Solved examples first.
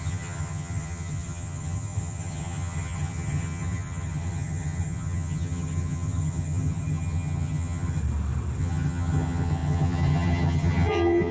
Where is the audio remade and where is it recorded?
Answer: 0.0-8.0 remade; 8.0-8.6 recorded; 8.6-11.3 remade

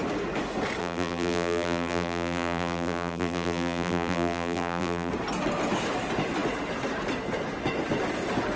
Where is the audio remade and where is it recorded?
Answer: 0.0-0.8 recorded; 0.8-5.1 remade; 5.1-8.6 recorded

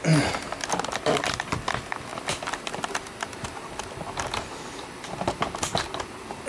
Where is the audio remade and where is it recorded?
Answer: 0.0-6.5 recorded

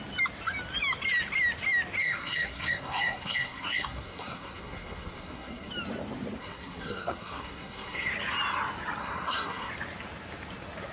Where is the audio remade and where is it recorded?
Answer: 0.0-2.0 recorded; 2.0-5.7 remade; 5.7-6.4 recorded; 6.4-8.1 remade; 8.1-9.0 recorded; 9.0-9.7 remade; 9.7-10.9 recorded

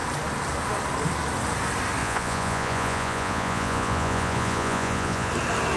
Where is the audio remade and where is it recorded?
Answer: 0.0-2.0 recorded; 2.0-5.3 remade; 5.3-5.8 recorded

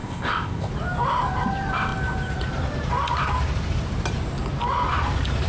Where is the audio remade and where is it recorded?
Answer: 0.0-0.7 remade; 0.7-5.5 recorded

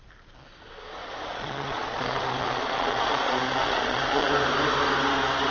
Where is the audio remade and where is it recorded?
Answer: 0.0-1.0 recorded; 1.0-4.3 remade; 4.3-5.5 recorded